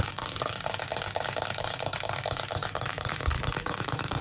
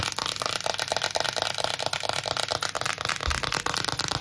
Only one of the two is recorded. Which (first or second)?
second